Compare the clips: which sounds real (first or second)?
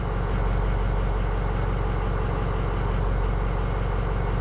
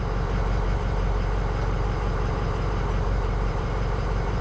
first